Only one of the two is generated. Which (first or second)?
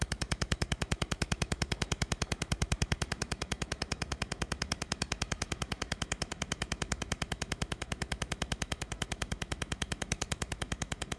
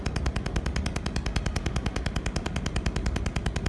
first